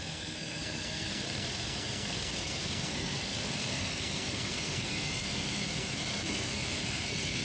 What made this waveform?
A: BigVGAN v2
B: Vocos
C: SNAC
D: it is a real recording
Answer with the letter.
C